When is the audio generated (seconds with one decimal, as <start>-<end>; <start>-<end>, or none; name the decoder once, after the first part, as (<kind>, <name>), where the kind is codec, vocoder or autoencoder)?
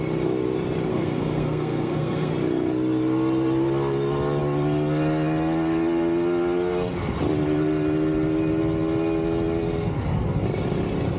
0.9-2.3 (codec, SNAC)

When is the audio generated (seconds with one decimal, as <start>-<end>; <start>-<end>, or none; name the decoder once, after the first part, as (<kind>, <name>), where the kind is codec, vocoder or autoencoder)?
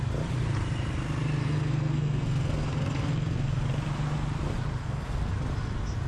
1.4-3.6 (codec, SNAC); 4.8-5.3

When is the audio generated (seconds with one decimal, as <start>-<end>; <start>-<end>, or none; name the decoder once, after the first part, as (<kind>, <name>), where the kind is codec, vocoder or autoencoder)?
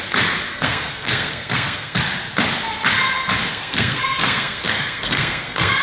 0.5-2.0 (codec, SNAC); 3.5-5.8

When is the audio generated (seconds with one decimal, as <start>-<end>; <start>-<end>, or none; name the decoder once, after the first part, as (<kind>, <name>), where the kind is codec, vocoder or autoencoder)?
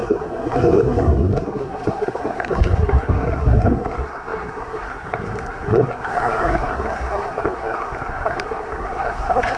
0.0-9.6 (codec, SNAC)